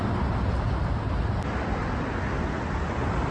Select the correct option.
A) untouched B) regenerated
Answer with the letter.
A